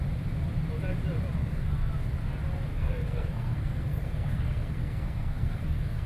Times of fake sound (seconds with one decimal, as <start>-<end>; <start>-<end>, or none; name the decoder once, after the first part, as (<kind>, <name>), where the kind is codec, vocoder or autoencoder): 1.4-1.9 (codec, SNAC); 2.7-6.1

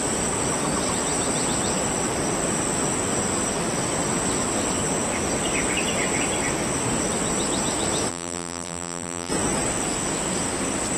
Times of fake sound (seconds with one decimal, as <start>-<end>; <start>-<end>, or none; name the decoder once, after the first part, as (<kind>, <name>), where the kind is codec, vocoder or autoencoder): 8.1-9.3 (vocoder, BigVGAN v2)